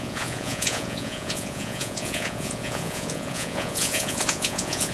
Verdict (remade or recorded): remade